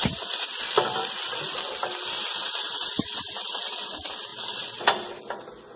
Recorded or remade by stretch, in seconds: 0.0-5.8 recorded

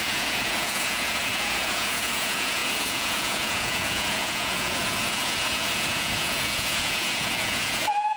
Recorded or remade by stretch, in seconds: 0.0-8.2 remade

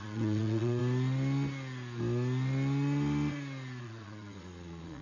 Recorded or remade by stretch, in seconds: 0.0-0.8 remade; 0.8-3.8 recorded; 3.8-5.0 remade

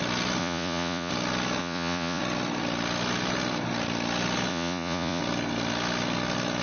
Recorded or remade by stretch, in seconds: 0.0-0.4 recorded; 0.4-1.1 remade; 1.1-1.6 recorded; 1.6-2.2 remade; 2.2-4.5 recorded; 4.5-5.2 remade; 5.2-6.6 recorded